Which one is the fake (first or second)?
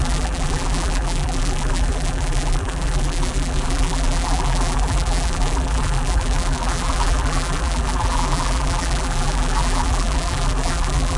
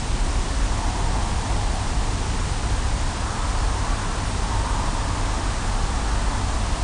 first